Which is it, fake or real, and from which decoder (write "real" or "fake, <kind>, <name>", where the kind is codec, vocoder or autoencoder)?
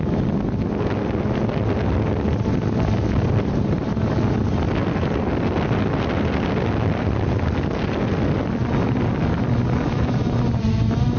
real